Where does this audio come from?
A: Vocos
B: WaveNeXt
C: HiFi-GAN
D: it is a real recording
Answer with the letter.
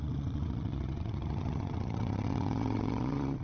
B